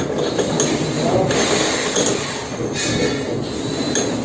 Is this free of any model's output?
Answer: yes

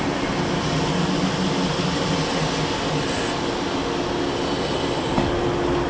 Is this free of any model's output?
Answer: yes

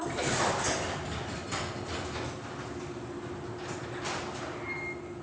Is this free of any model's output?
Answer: yes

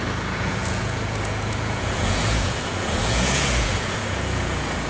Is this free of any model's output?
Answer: no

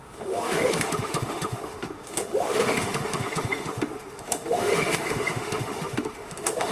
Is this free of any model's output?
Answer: no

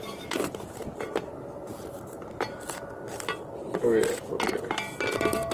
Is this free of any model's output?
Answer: yes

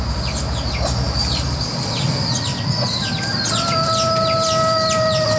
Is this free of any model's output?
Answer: yes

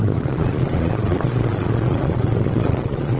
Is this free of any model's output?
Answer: no